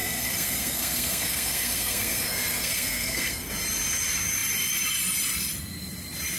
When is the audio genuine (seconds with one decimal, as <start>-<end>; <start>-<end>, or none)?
3.5-6.4